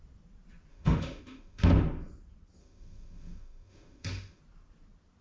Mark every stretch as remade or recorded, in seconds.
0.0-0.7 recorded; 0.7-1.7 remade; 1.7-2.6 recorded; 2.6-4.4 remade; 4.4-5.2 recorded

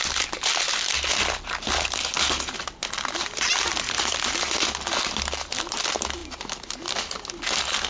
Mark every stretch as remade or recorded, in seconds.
0.0-7.9 recorded